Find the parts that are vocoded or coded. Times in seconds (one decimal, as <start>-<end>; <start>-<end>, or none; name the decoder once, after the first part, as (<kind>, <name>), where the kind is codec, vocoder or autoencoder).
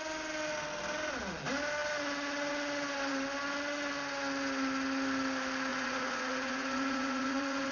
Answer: 5.7-7.7 (vocoder, Vocos)